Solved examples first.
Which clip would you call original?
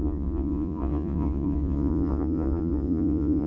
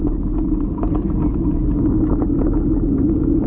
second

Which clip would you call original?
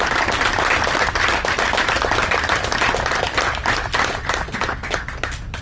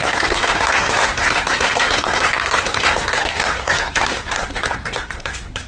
first